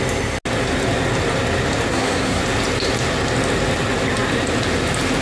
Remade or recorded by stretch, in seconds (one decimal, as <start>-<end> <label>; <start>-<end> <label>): 0.0-1.9 recorded; 1.9-2.4 remade; 2.4-5.2 recorded